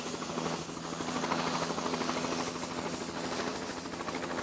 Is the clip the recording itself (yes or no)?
yes